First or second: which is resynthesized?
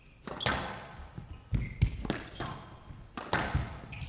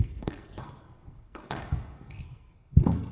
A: second